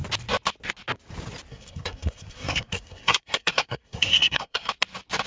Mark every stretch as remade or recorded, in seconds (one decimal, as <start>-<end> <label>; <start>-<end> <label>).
0.0-1.5 recorded; 1.5-4.7 remade; 4.7-5.3 recorded